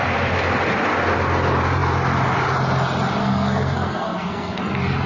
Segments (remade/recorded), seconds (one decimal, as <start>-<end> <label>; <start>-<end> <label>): 0.0-3.2 recorded; 3.2-4.6 remade; 4.6-5.1 recorded